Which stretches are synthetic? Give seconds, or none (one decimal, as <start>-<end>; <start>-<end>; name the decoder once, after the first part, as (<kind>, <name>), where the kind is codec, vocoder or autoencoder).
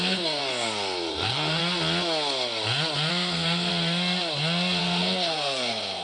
0.0-0.4 (codec, SNAC); 1.1-1.6; 3.1-3.7; 4.8-6.0